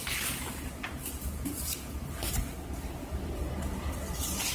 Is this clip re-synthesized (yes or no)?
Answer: no